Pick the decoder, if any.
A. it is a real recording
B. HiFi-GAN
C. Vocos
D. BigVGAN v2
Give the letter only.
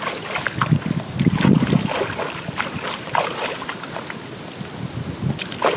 A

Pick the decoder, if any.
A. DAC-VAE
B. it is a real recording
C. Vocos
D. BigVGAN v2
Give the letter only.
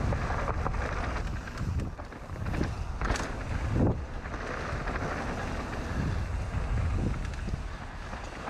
B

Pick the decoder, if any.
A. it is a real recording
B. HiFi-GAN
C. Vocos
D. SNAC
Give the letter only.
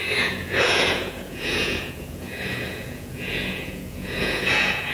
C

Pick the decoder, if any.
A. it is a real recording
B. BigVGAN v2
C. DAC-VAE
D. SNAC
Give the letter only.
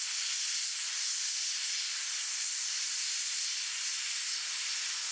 A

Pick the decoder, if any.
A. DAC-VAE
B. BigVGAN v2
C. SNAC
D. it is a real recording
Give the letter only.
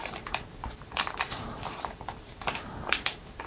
B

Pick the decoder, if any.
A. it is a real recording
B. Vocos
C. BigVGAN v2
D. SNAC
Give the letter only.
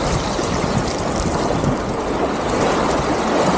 A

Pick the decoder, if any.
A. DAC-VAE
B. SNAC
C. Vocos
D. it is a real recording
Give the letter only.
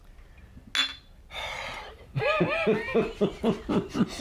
D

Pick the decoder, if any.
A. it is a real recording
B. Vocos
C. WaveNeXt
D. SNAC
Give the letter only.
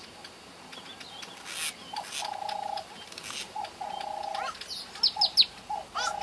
A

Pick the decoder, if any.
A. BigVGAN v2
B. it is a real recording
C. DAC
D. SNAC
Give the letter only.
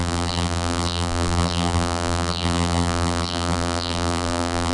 A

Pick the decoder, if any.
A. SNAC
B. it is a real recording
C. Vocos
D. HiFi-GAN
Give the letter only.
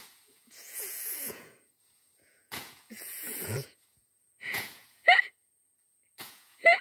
C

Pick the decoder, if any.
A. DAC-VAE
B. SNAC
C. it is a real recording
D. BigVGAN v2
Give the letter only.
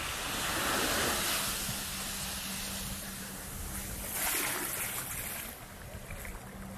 C